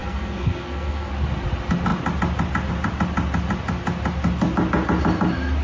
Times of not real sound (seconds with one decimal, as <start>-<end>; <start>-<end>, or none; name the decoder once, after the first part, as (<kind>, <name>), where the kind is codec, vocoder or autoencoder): 0.0-1.1 (codec, SNAC)